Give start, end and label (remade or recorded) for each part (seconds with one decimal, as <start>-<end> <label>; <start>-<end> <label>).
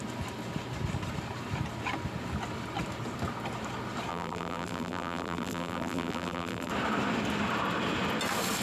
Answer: 0.0-4.1 recorded; 4.1-6.7 remade; 6.7-8.6 recorded